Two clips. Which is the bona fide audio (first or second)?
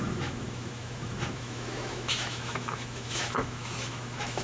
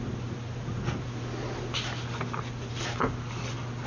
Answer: second